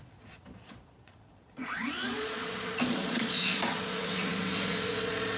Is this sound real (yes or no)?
no